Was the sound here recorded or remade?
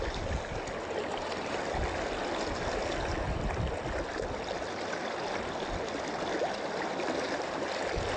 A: recorded